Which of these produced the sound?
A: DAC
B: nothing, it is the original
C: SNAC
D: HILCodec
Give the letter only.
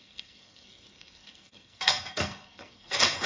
C